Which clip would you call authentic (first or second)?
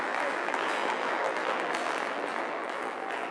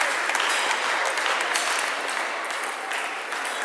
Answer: second